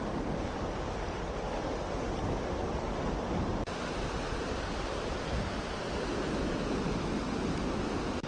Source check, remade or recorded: recorded